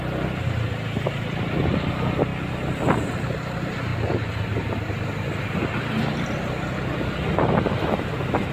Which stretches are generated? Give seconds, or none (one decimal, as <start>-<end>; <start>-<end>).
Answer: none